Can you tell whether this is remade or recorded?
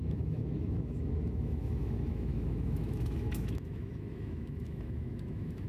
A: remade